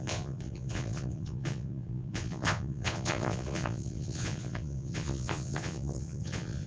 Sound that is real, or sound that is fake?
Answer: fake